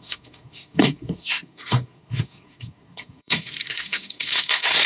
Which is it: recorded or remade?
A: remade